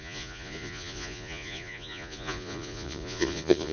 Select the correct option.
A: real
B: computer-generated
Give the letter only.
B